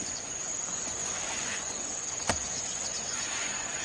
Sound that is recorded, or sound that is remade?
remade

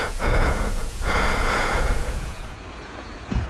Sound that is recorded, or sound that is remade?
remade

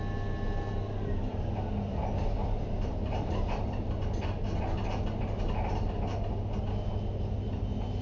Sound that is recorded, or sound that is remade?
recorded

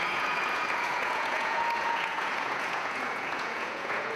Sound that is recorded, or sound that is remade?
remade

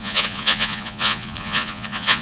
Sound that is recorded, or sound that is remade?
remade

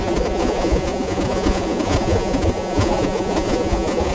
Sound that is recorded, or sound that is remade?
remade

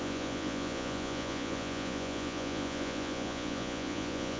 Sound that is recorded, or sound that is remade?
remade